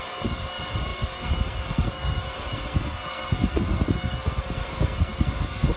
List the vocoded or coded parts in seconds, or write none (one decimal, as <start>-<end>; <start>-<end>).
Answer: 0.0-5.8